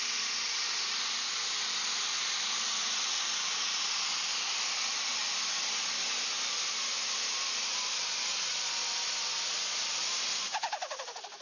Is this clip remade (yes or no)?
yes